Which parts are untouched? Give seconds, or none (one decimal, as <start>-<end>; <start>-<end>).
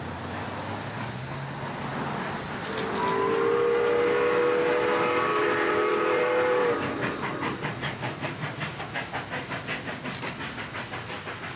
0.0-5.3; 8.8-11.6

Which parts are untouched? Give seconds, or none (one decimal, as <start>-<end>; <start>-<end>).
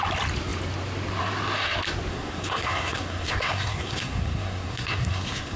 0.0-2.1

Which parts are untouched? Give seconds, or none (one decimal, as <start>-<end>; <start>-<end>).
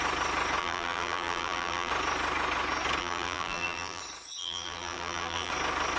0.0-0.6; 1.9-3.0; 4.0-4.4; 5.5-6.0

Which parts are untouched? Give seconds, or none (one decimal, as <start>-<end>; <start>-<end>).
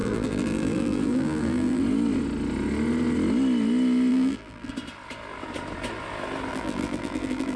1.8-4.1; 4.7-6.5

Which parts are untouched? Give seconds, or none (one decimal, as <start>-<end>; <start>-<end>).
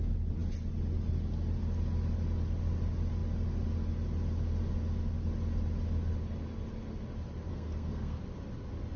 0.0-7.5; 8.2-9.0